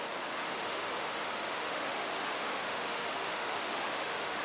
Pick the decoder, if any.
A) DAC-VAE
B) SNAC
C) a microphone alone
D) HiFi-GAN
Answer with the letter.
A